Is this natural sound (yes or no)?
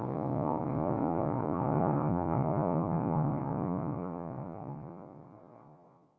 no